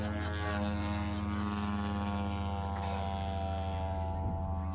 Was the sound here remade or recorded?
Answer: recorded